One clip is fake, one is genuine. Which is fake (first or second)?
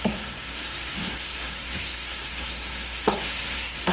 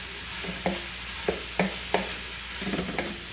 first